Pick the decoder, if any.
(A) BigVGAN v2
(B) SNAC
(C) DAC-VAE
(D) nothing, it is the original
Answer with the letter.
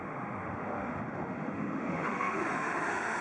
C